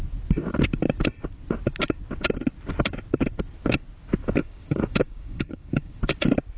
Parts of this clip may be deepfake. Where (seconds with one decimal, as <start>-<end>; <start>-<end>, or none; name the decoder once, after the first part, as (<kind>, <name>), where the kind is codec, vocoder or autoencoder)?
4.4-6.0 (codec, DAC)